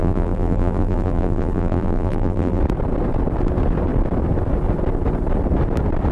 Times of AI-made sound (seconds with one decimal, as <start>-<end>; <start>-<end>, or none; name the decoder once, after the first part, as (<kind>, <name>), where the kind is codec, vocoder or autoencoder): 0.0-2.6 (vocoder, BigVGAN v2)